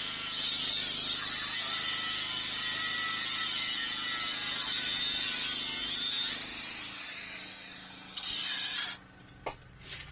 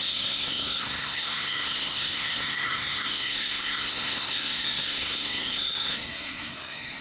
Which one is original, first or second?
first